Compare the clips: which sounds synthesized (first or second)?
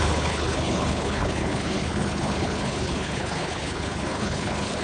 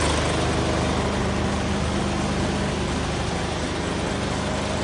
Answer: first